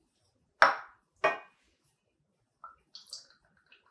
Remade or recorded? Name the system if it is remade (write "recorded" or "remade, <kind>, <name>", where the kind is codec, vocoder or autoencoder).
recorded